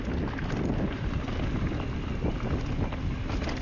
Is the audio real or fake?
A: real